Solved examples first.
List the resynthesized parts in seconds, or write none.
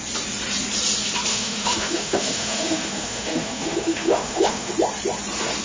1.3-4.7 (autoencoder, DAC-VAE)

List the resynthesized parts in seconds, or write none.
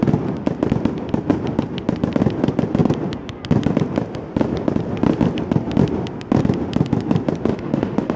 7.5-8.2 (autoencoder, DAC-VAE)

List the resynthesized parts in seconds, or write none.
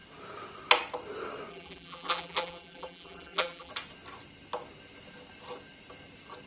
1.5-3.7 (vocoder, BigVGAN v2)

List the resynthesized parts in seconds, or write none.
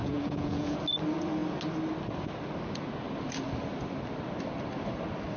0.0-0.8 (vocoder, Vocos)